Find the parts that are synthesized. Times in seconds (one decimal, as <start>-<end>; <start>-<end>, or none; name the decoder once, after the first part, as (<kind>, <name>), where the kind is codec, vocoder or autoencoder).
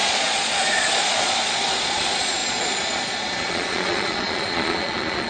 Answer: 0.0-5.3 (vocoder, Vocos)